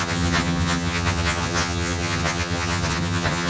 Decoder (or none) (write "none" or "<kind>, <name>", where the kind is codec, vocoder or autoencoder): vocoder, HiFi-GAN